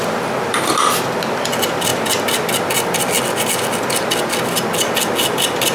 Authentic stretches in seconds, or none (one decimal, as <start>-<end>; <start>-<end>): 0.0-5.7